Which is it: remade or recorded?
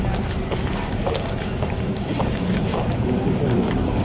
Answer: recorded